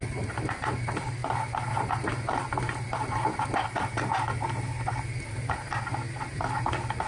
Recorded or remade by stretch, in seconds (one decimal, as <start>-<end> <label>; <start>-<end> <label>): 0.0-7.1 recorded